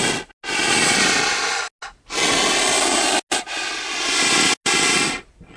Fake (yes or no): no